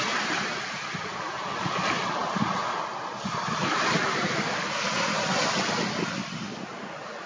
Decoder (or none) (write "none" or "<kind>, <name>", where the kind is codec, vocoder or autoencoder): none